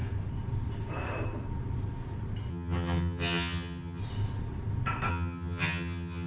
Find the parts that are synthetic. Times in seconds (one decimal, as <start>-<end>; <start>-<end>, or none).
2.5-4.0; 5.1-6.3